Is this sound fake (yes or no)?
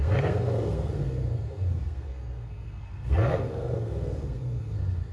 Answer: yes